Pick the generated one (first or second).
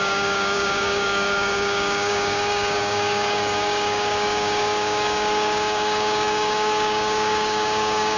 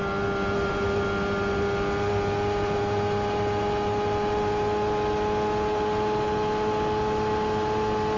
first